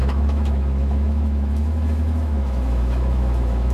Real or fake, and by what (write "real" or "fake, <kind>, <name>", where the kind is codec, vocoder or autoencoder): fake, autoencoder, DAC-VAE